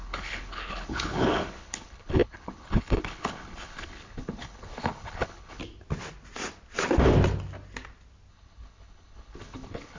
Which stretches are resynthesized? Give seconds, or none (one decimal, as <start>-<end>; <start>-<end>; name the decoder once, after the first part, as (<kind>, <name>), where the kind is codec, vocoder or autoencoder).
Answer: 0.0-5.6 (codec, HILCodec); 8.3-10.0

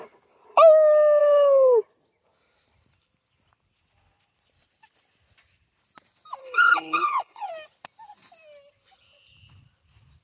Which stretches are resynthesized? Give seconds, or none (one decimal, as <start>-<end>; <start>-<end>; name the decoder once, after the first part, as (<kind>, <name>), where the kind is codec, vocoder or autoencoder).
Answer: 1.2-1.8 (codec, HILCodec); 6.4-7.5

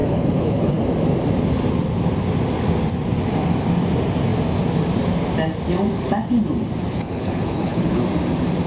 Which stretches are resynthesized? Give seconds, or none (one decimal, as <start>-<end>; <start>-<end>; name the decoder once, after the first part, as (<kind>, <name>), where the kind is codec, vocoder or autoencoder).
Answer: 0.0-0.8 (codec, HILCodec); 6.9-8.0